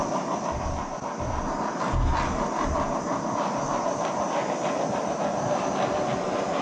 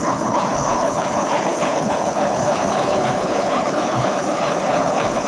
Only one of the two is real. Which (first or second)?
first